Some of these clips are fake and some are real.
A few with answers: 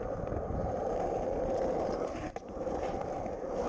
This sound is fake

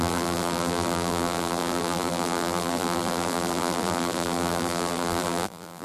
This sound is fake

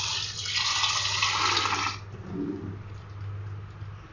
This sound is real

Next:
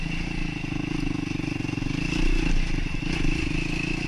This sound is real